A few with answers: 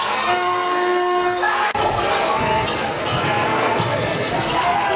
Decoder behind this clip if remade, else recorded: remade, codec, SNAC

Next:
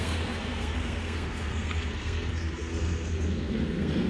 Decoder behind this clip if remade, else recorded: remade, codec, SNAC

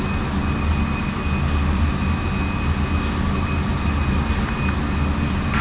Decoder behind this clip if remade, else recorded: recorded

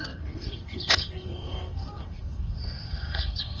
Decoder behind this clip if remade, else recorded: remade, codec, SNAC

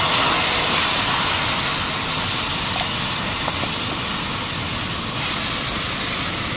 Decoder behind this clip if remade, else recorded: recorded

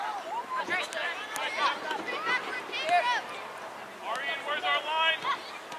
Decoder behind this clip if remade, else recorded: recorded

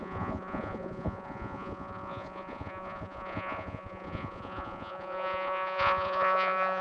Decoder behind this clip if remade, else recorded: remade, vocoder, Vocos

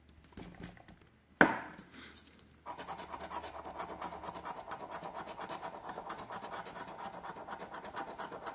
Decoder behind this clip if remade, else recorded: recorded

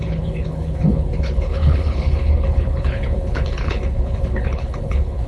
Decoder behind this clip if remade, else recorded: remade, codec, HILCodec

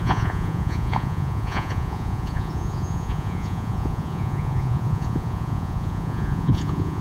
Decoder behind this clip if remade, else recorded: remade, vocoder, Vocos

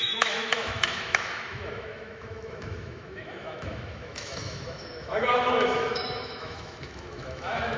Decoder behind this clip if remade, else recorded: remade, autoencoder, DAC-VAE